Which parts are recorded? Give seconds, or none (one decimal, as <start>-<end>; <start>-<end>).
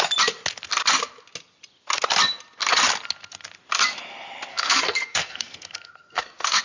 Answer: 0.0-4.5